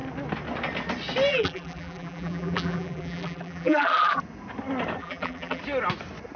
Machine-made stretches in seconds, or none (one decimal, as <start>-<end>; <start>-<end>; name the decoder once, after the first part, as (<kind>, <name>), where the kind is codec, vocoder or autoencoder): 1.3-4.2 (vocoder, BigVGAN v2); 5.0-5.6